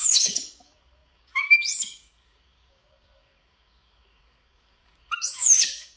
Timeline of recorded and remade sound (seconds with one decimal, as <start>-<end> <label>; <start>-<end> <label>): 0.0-6.0 remade